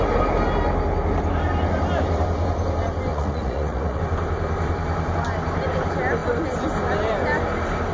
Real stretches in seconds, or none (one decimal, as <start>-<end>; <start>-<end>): 0.0-3.1; 4.0-7.9